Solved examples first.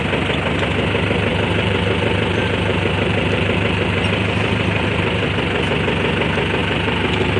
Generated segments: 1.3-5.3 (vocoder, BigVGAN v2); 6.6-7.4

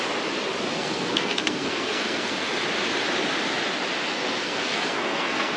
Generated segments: 0.7-2.6 (codec, SNAC); 4.1-5.6

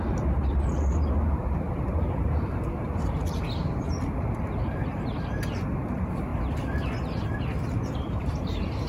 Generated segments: 0.0-3.2 (vocoder, BigVGAN v2); 5.8-6.3; 7.9-8.9

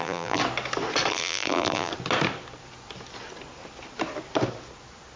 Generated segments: 0.0-0.4 (vocoder, BigVGAN v2); 1.1-1.9

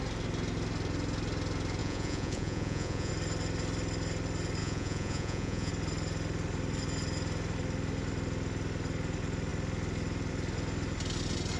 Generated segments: 1.8-3.1 (vocoder, Vocos); 4.6-5.7